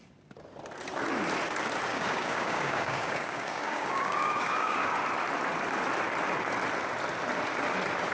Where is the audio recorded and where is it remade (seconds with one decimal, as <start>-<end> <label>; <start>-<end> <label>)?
0.0-1.9 recorded; 1.9-4.9 remade; 4.9-8.1 recorded